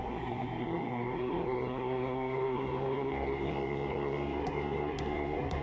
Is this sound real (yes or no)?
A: no